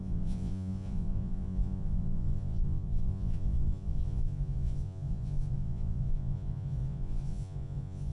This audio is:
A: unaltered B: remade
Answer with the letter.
B